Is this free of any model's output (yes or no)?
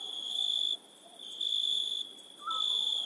yes